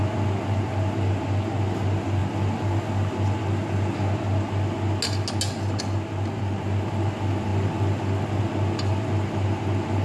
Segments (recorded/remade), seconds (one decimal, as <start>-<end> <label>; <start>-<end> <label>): 0.0-10.0 recorded